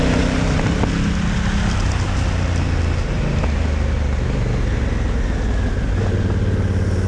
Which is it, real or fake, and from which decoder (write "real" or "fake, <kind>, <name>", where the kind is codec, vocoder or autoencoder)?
real